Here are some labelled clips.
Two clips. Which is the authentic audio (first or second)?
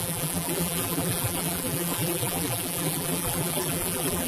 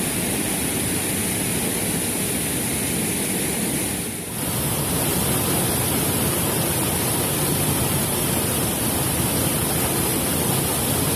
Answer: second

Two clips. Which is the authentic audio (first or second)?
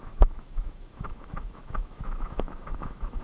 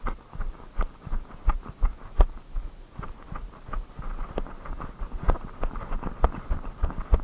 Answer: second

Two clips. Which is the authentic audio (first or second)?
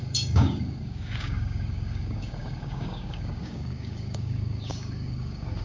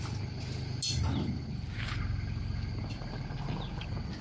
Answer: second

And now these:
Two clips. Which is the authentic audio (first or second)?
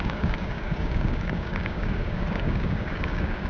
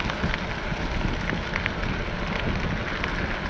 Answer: second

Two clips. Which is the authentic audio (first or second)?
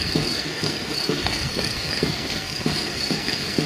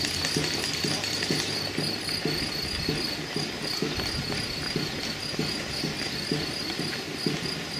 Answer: second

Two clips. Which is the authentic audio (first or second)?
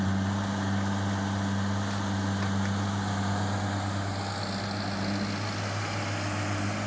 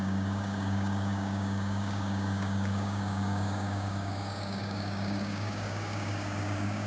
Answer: first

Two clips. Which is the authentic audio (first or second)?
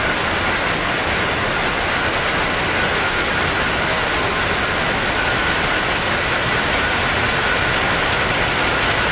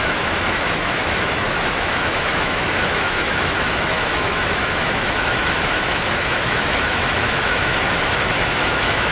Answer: first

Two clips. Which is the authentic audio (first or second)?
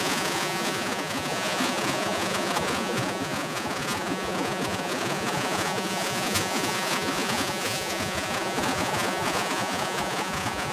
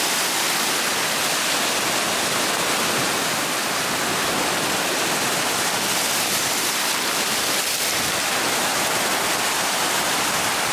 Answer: second